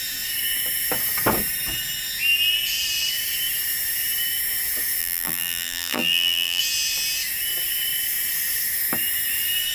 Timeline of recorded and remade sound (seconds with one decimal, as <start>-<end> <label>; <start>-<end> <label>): 0.0-5.0 recorded; 5.0-6.6 remade; 6.6-9.7 recorded